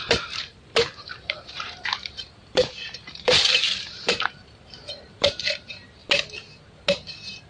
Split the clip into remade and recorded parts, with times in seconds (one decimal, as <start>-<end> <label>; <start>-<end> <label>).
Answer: 0.0-6.0 remade; 6.0-7.5 recorded